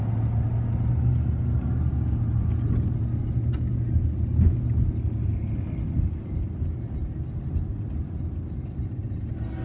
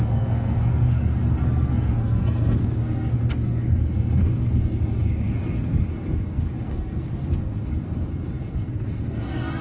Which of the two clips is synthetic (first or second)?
second